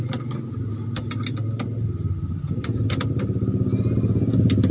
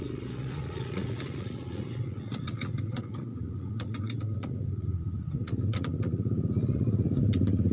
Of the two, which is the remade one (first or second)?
second